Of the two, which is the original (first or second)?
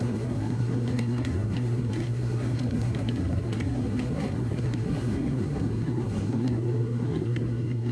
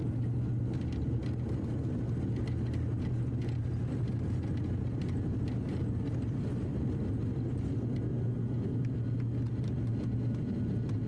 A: second